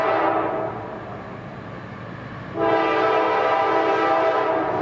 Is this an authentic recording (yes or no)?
yes